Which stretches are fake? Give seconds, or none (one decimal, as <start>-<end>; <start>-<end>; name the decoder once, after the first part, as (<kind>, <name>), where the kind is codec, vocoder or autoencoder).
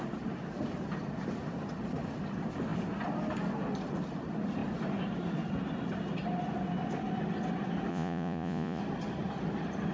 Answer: 7.9-8.8 (vocoder, Vocos)